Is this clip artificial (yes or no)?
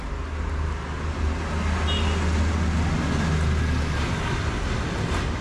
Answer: no